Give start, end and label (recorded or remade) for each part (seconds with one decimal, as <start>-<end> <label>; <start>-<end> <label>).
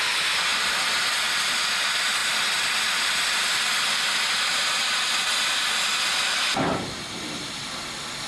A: 0.0-8.3 recorded